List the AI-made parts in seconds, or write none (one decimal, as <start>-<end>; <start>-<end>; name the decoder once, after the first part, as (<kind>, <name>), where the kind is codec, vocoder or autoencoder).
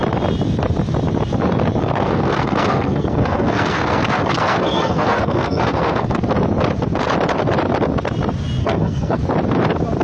1.8-6.2 (codec, SNAC); 8.6-9.2